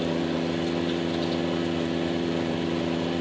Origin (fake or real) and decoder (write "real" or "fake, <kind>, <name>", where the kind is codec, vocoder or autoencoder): real